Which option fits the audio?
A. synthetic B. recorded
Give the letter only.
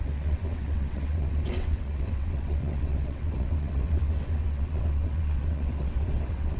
A